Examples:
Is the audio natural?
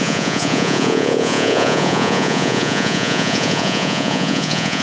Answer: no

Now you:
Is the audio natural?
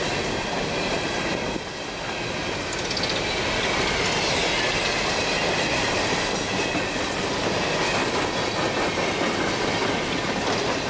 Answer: yes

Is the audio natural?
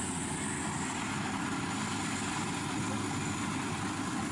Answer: yes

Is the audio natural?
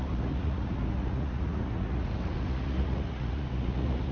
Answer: no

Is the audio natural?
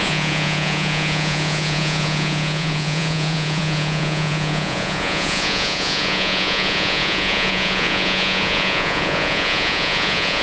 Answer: no